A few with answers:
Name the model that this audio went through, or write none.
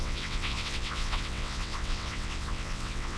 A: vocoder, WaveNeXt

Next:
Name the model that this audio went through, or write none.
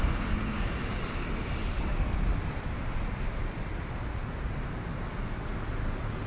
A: none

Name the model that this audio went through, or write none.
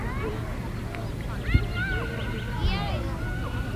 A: none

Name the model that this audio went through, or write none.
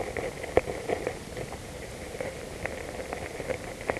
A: vocoder, BigVGAN v2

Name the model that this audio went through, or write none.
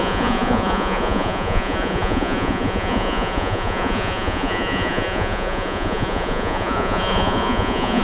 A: vocoder, Vocos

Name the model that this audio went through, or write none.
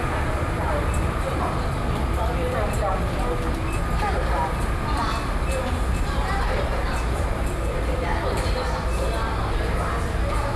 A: none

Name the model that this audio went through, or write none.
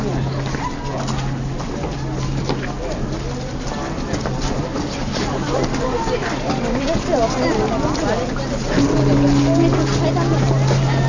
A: none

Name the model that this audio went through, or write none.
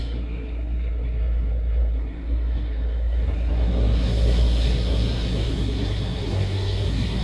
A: codec, SNAC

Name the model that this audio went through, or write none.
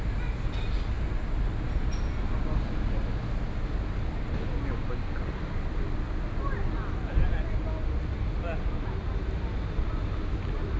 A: none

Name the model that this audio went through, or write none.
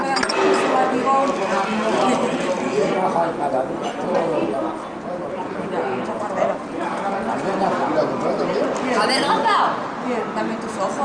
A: none